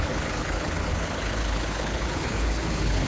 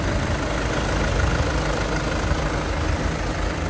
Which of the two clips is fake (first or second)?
first